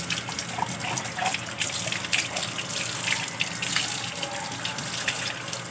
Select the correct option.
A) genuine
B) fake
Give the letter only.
A